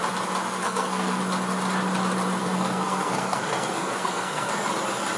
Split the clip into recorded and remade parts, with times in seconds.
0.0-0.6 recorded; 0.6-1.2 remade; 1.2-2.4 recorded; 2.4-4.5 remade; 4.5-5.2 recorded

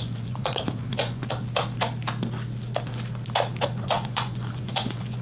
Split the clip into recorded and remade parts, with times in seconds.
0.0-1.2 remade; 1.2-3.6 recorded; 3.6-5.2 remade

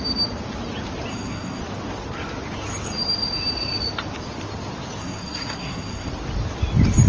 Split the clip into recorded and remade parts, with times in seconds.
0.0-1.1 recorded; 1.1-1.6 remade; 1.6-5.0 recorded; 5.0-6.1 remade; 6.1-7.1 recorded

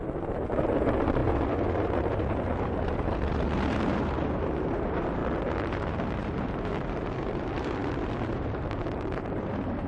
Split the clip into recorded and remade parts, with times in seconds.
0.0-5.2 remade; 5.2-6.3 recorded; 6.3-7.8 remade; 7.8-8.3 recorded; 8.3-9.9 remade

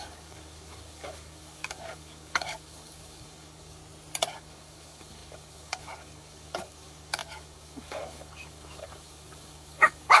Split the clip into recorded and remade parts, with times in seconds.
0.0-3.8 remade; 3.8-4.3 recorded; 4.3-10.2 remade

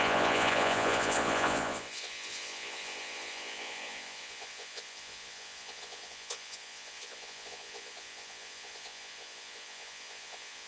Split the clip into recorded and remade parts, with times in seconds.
0.0-10.7 remade

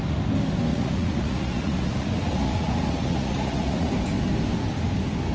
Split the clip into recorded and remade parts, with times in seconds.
0.0-0.7 recorded; 0.7-3.9 remade; 3.9-5.3 recorded

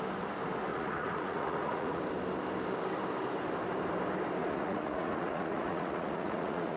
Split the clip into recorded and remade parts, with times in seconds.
0.0-0.7 recorded; 0.7-2.0 remade; 2.0-4.4 recorded; 4.4-6.8 remade